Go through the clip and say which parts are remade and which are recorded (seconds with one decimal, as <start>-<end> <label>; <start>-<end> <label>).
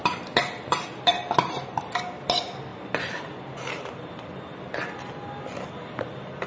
0.0-6.5 recorded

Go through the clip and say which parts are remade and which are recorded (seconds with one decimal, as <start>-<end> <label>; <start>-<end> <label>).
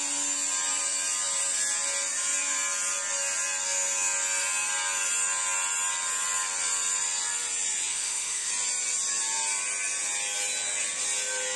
0.0-7.9 recorded; 7.9-8.5 remade; 8.5-11.6 recorded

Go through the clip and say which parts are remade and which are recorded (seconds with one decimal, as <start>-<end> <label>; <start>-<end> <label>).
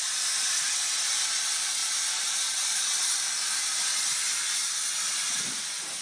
0.0-6.0 recorded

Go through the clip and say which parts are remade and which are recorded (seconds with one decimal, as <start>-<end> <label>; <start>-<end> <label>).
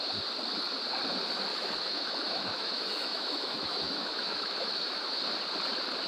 0.0-1.5 recorded; 1.5-5.2 remade; 5.2-6.1 recorded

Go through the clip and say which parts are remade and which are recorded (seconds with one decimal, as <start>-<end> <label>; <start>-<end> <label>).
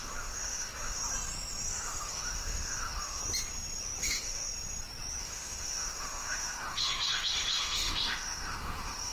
0.0-1.0 remade; 1.0-1.7 recorded; 1.7-3.2 remade; 3.2-4.0 recorded; 4.0-4.4 remade; 4.4-5.2 recorded; 5.2-9.1 remade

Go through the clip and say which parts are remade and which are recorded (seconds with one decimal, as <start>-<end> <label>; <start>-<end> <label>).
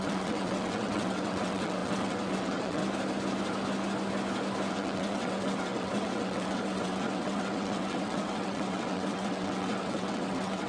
0.0-2.8 remade; 2.8-4.7 recorded; 4.7-10.7 remade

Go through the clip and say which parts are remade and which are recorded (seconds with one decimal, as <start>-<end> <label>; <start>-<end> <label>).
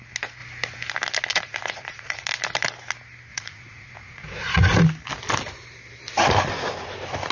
0.0-1.3 recorded; 1.3-2.3 remade; 2.3-3.3 recorded; 3.3-4.8 remade; 4.8-7.3 recorded